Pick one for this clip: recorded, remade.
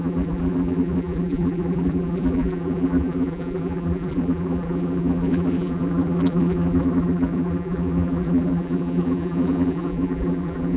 remade